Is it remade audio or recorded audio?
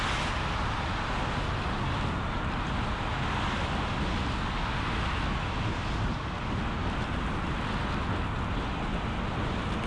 recorded